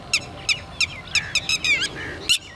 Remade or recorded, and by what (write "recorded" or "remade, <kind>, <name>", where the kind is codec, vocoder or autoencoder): recorded